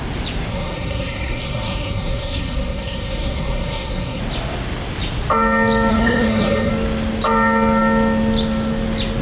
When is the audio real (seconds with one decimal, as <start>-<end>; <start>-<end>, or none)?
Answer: 0.0-0.5; 4.2-5.9; 6.7-9.2